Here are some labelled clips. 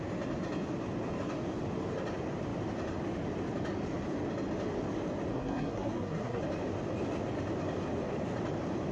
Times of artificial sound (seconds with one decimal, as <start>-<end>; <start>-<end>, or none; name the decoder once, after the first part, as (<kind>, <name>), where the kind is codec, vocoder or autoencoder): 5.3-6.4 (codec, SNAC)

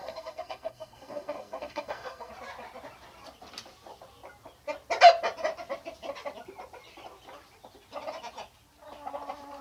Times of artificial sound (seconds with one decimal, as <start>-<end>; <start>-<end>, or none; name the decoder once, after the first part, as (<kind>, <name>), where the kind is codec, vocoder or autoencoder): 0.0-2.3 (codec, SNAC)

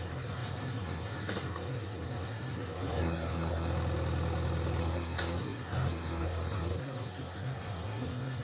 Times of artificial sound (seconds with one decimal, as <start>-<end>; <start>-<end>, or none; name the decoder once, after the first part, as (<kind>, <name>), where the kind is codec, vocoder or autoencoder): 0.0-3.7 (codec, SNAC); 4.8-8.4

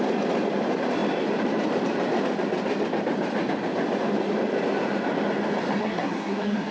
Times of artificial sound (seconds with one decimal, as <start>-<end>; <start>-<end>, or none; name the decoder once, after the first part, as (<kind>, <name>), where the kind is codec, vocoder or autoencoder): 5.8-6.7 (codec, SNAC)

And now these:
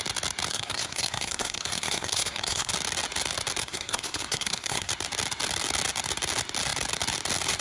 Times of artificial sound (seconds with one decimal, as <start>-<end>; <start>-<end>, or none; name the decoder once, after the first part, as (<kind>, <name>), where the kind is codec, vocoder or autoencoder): 0.5-2.7 (codec, SNAC); 3.6-4.9

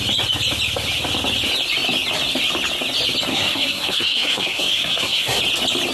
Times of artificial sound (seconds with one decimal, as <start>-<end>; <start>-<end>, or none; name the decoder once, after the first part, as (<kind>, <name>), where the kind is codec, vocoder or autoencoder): 3.3-5.4 (codec, SNAC)